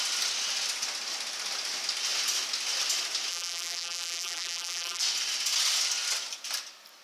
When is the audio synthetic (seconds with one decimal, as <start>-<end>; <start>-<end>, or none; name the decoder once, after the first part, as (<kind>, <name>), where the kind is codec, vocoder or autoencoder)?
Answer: 3.3-5.0 (vocoder, BigVGAN v2)